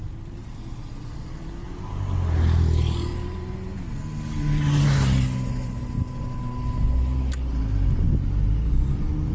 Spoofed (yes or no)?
no